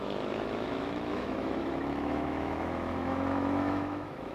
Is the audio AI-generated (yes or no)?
yes